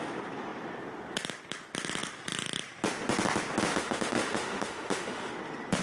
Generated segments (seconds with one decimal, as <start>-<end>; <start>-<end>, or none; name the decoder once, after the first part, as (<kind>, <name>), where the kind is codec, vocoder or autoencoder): 3.7-5.3 (autoencoder, DAC-VAE)